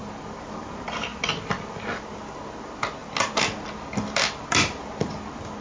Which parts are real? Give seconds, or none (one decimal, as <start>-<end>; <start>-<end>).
0.0-5.6